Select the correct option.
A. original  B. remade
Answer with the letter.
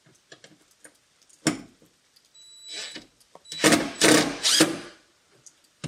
A